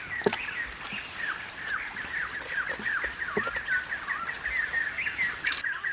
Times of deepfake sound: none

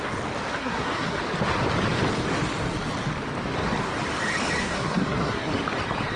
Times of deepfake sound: 0.6-1.2 (codec, SNAC); 4.6-5.5

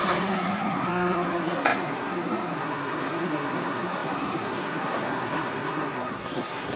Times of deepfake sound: 0.0-6.8 (codec, SNAC)